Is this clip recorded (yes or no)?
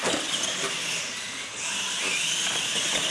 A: yes